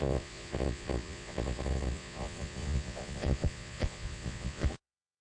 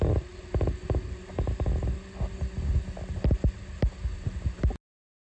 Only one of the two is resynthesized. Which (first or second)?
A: first